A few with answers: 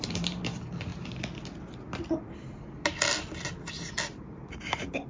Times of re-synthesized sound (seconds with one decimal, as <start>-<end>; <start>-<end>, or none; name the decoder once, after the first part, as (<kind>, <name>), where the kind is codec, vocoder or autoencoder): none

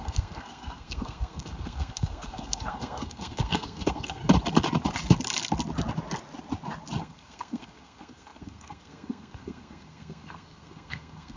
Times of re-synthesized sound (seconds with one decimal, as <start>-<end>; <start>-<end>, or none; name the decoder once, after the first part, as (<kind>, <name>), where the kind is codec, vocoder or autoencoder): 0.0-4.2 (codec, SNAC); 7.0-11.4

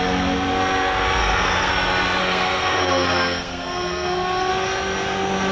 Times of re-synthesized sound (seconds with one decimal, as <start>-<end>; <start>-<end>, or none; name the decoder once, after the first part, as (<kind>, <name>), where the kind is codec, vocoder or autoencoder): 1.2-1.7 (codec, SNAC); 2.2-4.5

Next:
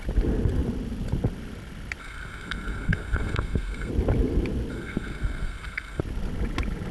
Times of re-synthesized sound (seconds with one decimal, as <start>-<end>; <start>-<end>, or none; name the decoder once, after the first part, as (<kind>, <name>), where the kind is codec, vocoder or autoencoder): 2.0-3.9 (codec, SNAC); 4.7-6.0

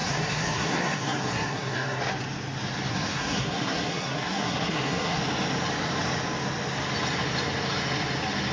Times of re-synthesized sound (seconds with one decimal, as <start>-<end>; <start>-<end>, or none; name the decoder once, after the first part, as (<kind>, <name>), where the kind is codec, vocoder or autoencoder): 0.0-2.0 (codec, SNAC); 2.9-5.2